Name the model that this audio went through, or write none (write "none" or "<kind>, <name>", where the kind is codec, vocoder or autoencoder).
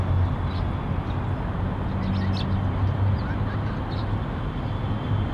none